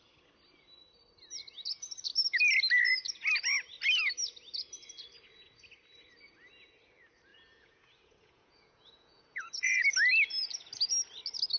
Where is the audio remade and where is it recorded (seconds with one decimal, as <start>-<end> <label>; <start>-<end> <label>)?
0.0-7.3 recorded; 7.3-9.8 remade; 9.8-11.6 recorded